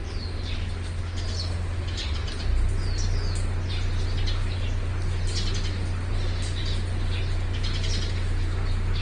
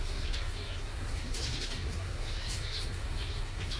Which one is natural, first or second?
first